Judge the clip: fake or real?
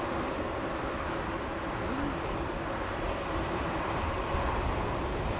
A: real